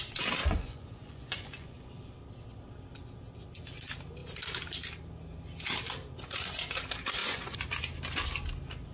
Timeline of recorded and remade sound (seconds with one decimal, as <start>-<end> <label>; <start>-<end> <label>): 0.0-0.4 recorded; 0.4-1.9 remade; 1.9-7.2 recorded; 7.2-7.8 remade; 7.8-8.9 recorded